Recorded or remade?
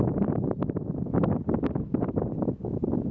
recorded